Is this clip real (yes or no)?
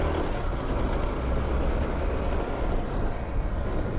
yes